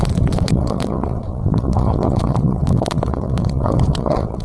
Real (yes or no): no